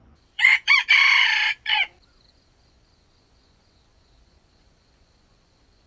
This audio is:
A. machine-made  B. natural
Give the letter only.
A